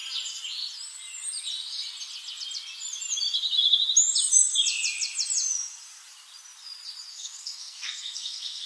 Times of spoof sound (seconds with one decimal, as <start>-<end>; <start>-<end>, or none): 7.1-8.7